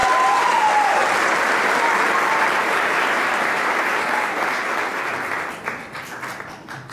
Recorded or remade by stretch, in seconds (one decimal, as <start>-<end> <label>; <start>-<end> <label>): 0.0-6.9 recorded